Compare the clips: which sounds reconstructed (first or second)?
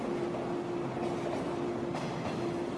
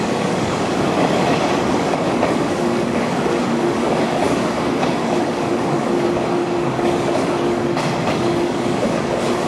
second